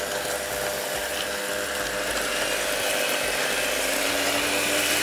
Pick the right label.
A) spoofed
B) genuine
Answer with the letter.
B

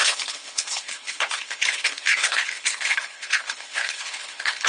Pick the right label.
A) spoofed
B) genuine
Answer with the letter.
A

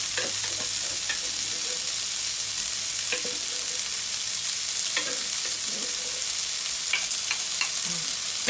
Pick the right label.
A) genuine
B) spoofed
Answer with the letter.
A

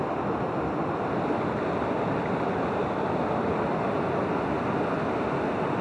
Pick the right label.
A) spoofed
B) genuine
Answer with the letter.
B